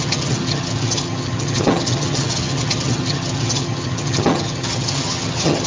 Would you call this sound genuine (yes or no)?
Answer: no